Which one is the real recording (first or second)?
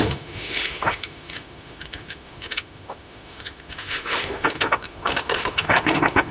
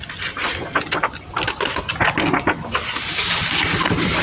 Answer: second